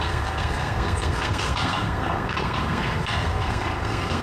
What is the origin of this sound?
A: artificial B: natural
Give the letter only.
A